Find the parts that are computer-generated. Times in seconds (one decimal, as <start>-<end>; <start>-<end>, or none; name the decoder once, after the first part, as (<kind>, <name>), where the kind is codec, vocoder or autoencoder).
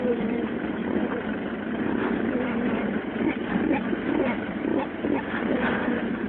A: 0.0-0.8 (vocoder, BigVGAN v2); 4.2-4.7; 5.2-6.3